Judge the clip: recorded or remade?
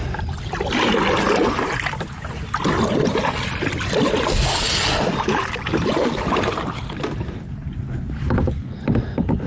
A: recorded